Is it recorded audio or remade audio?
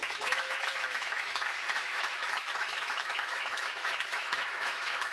remade